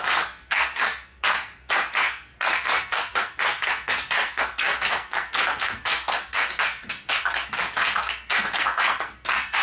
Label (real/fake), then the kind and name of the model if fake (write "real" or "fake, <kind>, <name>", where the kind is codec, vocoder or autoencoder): fake, codec, SNAC